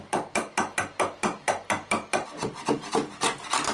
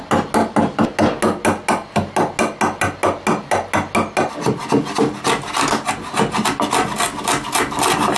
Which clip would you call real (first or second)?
second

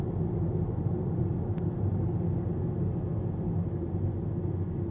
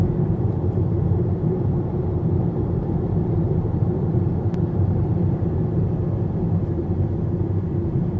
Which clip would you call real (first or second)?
first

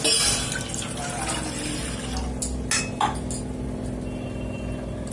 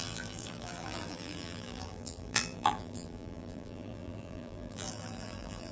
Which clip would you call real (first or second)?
first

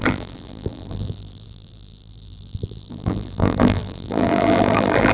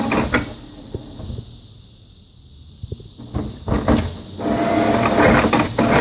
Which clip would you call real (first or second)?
second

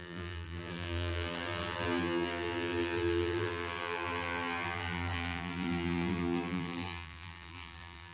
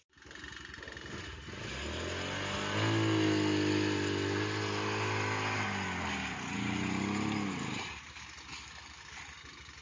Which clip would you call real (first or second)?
second